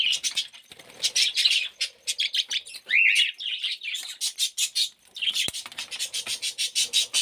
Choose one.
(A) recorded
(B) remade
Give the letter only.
A